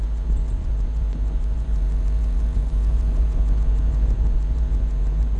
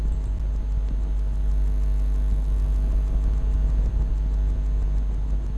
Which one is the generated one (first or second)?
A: first